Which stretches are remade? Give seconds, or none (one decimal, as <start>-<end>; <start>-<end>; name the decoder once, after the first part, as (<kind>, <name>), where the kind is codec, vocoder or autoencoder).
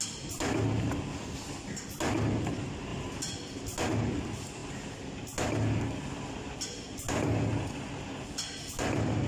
none